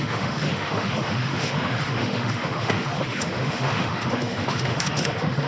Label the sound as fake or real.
fake